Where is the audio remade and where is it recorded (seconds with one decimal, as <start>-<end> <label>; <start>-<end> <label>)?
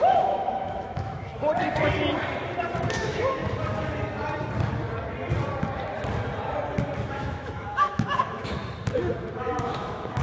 0.0-1.3 remade; 1.3-2.9 recorded; 2.9-3.4 remade; 3.4-7.1 recorded; 7.1-8.6 remade; 8.6-9.4 recorded; 9.4-10.2 remade